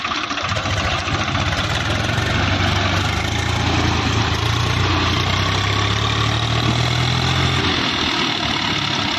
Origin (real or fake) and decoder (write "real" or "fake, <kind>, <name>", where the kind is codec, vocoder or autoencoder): real